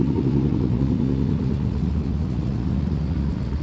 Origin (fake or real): fake